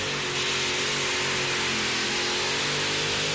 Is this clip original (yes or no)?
yes